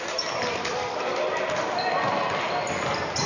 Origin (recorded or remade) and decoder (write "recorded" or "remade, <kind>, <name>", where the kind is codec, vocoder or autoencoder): recorded